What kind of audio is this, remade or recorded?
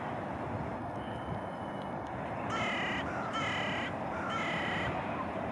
recorded